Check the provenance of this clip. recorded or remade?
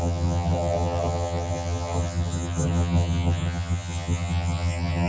remade